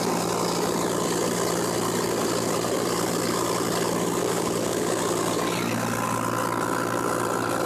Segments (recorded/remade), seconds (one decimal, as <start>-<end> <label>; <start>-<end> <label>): 0.0-4.2 recorded; 4.2-5.0 remade; 5.0-7.7 recorded